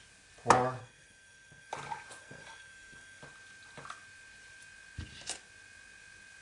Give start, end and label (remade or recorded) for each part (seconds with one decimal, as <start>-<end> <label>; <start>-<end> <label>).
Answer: 0.0-0.8 recorded; 0.8-1.7 remade; 1.7-2.2 recorded; 2.2-3.2 remade; 3.2-6.4 recorded